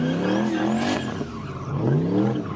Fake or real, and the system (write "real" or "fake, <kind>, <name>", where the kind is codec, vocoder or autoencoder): real